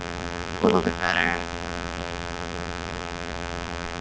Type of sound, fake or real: fake